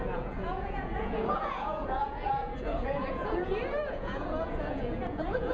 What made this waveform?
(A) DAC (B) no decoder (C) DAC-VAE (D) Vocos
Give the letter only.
D